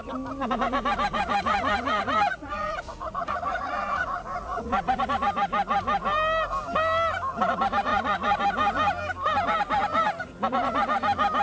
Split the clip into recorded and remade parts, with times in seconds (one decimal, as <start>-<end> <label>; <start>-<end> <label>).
0.0-1.1 recorded; 1.1-5.0 remade; 5.0-7.9 recorded; 7.9-8.4 remade; 8.4-11.4 recorded